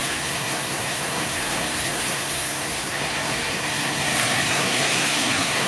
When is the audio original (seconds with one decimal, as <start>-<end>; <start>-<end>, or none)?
none